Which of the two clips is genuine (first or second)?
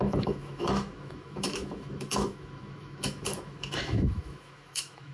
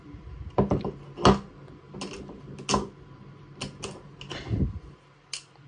second